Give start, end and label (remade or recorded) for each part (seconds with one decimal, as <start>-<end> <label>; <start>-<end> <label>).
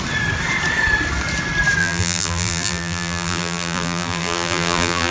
0.0-1.8 recorded; 1.8-5.1 remade